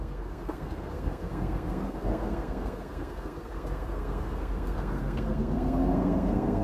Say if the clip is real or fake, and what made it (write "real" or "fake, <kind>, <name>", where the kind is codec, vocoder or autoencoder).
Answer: fake, codec, SNAC